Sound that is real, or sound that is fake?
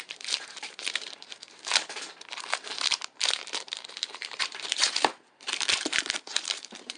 fake